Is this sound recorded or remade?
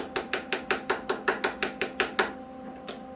recorded